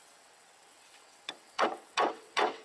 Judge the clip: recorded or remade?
remade